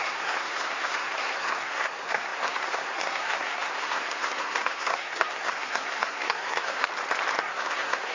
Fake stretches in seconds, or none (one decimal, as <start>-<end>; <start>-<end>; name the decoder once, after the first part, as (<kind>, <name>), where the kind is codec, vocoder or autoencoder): 0.0-6.9 (codec, SNAC); 7.4-8.1